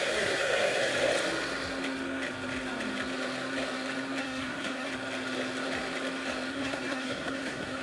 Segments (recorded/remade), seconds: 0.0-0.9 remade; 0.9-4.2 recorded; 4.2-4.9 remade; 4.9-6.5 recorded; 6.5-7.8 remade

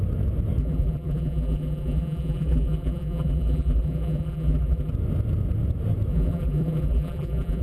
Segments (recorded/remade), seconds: 0.0-0.6 recorded; 0.6-4.9 remade; 4.9-6.1 recorded; 6.1-7.6 remade

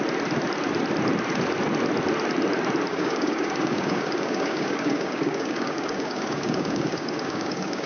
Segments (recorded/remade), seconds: 0.0-2.9 recorded; 2.9-7.9 remade

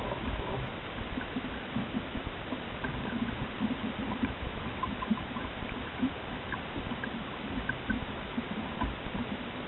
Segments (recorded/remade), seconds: 0.0-2.1 recorded; 2.1-7.2 remade; 7.2-9.7 recorded

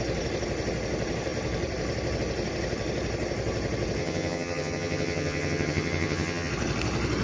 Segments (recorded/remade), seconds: 0.0-4.0 recorded; 4.0-6.5 remade; 6.5-7.2 recorded

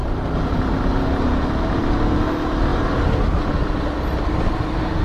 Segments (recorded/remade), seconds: 0.0-5.0 recorded